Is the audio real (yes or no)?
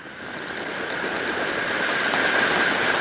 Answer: yes